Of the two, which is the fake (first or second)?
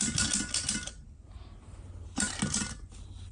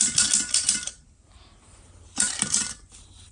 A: second